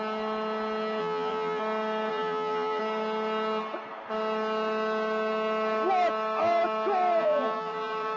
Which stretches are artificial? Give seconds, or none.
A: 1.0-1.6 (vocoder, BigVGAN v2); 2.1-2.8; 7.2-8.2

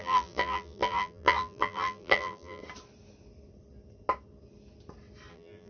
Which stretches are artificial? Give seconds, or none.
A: 0.0-2.6 (vocoder, BigVGAN v2); 5.3-5.7

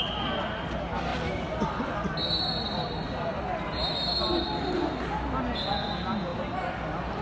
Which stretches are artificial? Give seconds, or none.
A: none

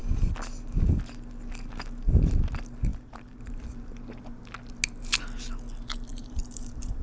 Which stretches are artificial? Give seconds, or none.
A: 2.9-3.4 (vocoder, BigVGAN v2); 6.1-7.0